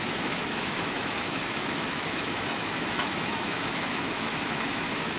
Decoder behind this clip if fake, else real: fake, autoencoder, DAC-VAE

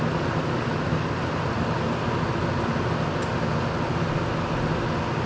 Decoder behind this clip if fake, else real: real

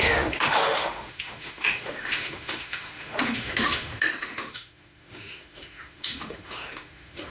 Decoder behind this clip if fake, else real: fake, autoencoder, DAC-VAE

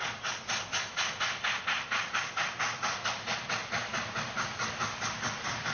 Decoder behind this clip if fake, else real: real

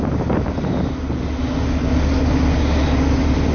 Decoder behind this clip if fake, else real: real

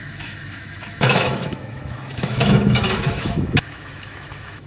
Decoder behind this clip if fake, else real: fake, autoencoder, DAC-VAE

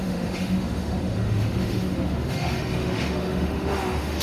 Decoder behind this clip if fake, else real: fake, autoencoder, DAC-VAE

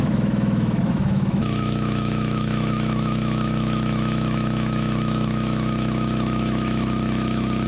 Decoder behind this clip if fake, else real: fake, autoencoder, DAC-VAE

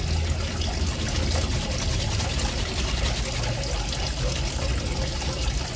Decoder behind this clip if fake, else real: real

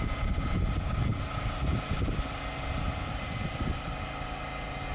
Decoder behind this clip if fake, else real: real